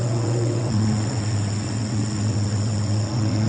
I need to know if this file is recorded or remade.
remade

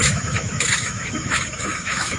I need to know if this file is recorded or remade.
remade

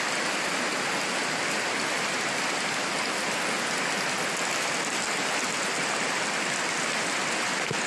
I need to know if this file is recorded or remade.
recorded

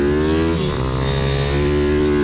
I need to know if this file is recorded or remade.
recorded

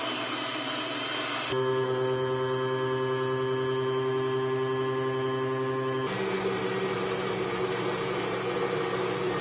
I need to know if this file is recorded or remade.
recorded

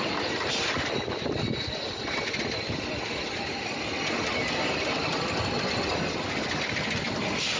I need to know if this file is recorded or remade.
recorded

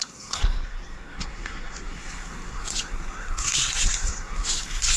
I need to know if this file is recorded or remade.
remade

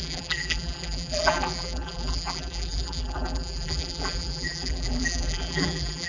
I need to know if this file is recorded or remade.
remade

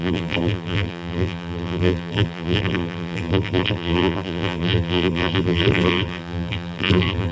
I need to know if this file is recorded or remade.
remade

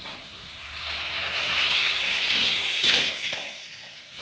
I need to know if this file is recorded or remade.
remade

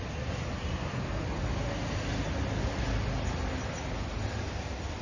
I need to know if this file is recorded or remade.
recorded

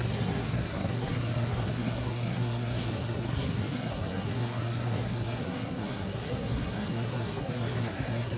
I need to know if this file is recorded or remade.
remade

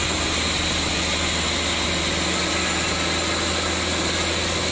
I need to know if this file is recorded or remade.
recorded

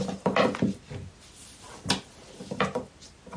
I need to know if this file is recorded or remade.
recorded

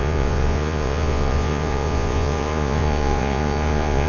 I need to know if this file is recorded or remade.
remade